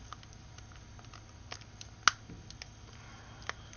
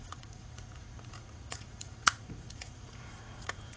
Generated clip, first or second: second